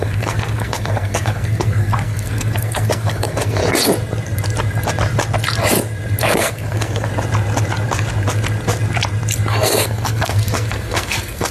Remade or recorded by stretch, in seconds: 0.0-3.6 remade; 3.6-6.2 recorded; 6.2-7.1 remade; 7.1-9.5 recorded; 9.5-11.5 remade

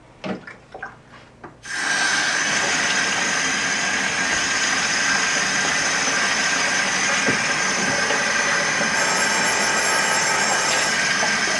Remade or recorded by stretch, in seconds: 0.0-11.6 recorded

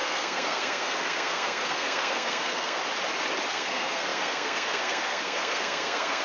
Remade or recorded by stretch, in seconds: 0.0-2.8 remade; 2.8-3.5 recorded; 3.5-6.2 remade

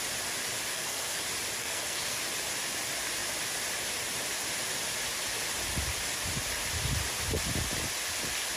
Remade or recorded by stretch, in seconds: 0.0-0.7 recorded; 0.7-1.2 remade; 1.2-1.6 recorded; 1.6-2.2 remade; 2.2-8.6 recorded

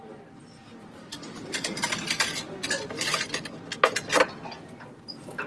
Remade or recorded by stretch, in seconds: 0.0-5.5 recorded

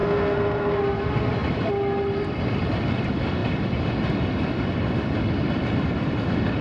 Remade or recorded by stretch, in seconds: 0.0-0.8 remade; 0.8-6.6 recorded

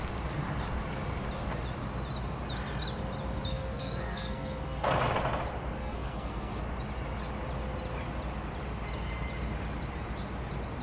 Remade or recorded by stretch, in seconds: 0.0-3.5 recorded; 3.5-4.9 remade; 4.9-5.8 recorded; 5.8-6.6 remade; 6.6-10.8 recorded

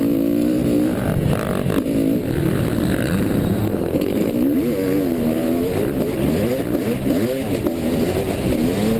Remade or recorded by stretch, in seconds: 0.0-3.6 recorded; 3.6-4.3 remade; 4.3-9.0 recorded